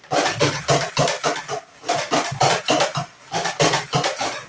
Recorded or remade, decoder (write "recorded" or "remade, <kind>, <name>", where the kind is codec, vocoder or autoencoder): recorded